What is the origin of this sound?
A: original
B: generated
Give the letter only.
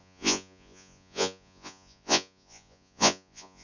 B